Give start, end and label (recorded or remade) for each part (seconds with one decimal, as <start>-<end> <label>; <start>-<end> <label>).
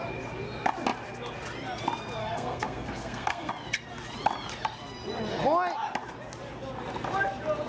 0.0-2.2 recorded; 2.2-3.5 remade; 3.5-7.7 recorded